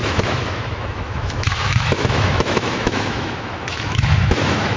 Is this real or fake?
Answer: fake